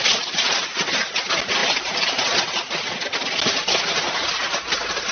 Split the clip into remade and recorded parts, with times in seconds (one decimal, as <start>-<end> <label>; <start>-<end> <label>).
0.0-5.1 recorded